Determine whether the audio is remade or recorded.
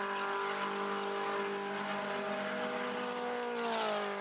recorded